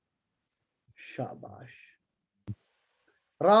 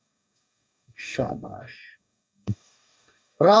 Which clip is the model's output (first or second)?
second